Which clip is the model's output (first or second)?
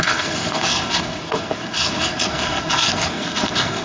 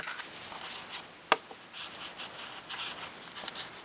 first